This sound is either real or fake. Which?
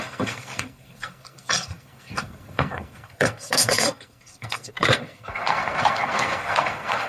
fake